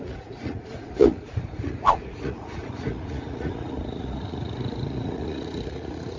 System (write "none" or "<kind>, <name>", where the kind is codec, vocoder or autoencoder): vocoder, Vocos